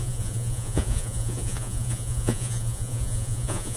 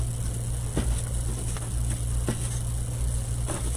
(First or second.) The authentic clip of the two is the second